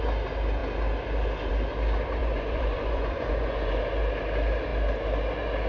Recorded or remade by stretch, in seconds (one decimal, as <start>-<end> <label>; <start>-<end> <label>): 0.0-2.2 recorded; 2.2-3.8 remade; 3.8-5.7 recorded